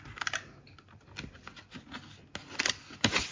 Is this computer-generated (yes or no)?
no